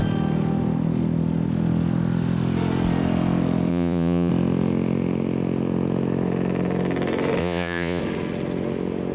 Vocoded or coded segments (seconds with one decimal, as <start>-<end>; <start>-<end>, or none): 3.7-4.3; 7.4-8.0